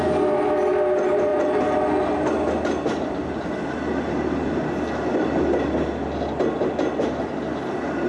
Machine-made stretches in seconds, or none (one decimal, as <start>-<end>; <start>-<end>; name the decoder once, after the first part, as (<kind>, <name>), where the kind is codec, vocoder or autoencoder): none